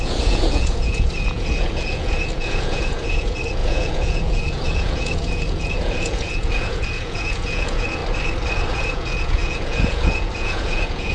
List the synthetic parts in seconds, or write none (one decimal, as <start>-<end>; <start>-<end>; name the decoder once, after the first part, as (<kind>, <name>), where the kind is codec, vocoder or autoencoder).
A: 0.0-8.0 (vocoder, Vocos); 8.7-11.1